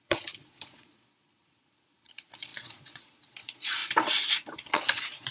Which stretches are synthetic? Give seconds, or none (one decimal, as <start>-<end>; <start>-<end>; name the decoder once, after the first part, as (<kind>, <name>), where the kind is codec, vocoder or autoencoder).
0.0-3.8 (vocoder, Vocos); 4.7-5.3